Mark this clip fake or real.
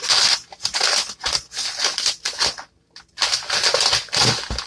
real